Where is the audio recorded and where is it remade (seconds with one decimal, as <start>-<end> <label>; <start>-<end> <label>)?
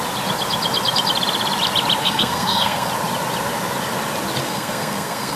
0.0-2.0 recorded; 2.0-2.9 remade; 2.9-4.4 recorded; 4.4-5.4 remade